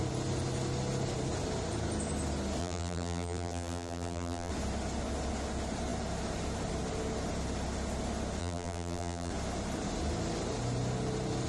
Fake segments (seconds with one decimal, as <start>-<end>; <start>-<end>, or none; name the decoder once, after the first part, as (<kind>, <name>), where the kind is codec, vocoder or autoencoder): 2.6-4.5 (vocoder, BigVGAN v2); 8.4-9.3